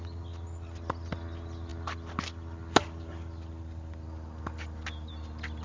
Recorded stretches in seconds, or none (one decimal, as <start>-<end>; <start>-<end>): 0.0-5.6